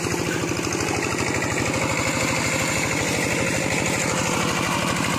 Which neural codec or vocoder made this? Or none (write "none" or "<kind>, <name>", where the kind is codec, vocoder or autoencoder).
none